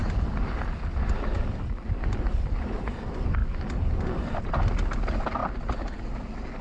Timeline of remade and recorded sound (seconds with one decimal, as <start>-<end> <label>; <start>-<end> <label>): 0.0-6.6 recorded